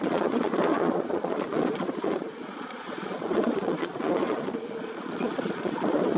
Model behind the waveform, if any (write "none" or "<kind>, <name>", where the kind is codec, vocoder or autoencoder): vocoder, Vocos